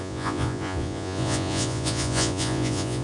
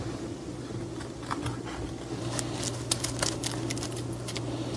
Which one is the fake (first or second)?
first